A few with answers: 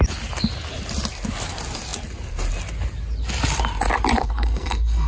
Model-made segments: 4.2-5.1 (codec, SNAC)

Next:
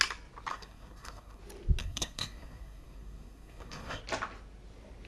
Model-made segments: 0.5-1.4 (codec, SNAC); 1.8-4.0

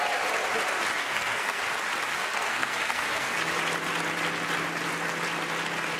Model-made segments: 1.0-1.6 (codec, SNAC); 2.1-3.5

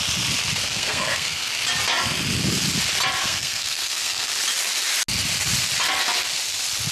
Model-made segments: 0.6-1.5 (codec, SNAC); 3.2-4.3

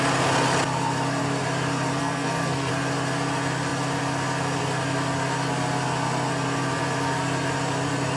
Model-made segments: 2.0-2.7 (codec, SNAC)

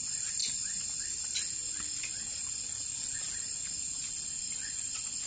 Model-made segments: none

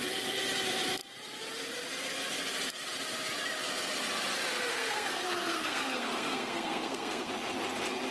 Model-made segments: 4.7-7.3 (codec, SNAC)

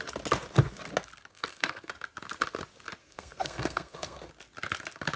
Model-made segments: 1.3-1.9 (codec, SNAC); 3.0-4.3